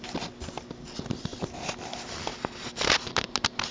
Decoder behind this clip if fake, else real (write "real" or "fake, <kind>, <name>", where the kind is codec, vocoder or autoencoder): real